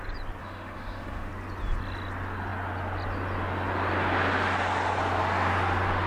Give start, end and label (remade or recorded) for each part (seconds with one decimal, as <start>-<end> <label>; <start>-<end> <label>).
0.0-0.4 recorded; 0.4-1.3 remade; 1.3-6.1 recorded